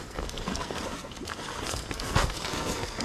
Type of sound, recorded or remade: remade